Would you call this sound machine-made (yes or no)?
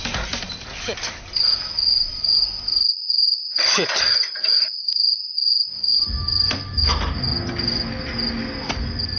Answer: no